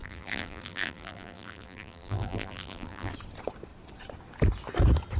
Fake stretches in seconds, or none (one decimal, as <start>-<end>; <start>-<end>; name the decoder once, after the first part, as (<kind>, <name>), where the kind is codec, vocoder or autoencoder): 0.0-3.1 (vocoder, BigVGAN v2)